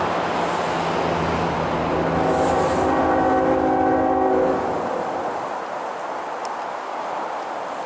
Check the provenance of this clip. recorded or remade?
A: recorded